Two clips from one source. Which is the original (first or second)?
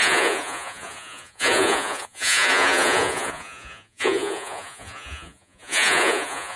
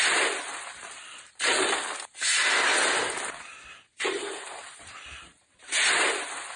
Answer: second